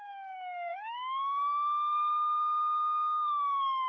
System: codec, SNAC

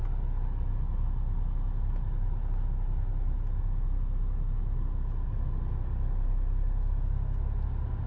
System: none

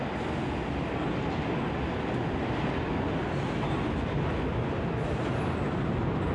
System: none